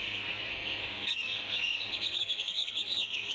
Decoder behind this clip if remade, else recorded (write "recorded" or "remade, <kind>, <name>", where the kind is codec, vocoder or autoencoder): remade, codec, SNAC